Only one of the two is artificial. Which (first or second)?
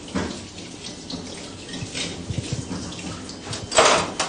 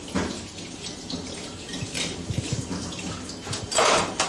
second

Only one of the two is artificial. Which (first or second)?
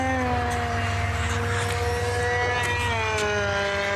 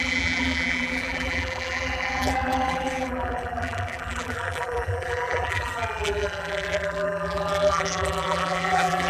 second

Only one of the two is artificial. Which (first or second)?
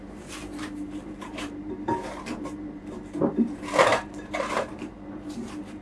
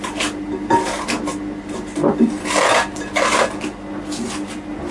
first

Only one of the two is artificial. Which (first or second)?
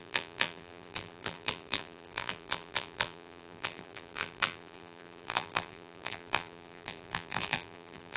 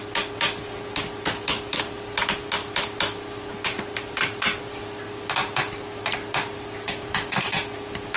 first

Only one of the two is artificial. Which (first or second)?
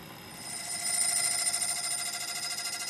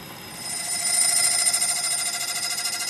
second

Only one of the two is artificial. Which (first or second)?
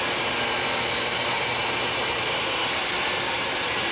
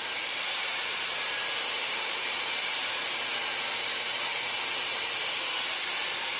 second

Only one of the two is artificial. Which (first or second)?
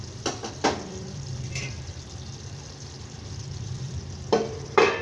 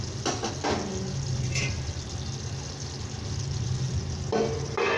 first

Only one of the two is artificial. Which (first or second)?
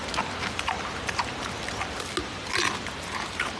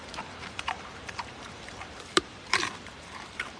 second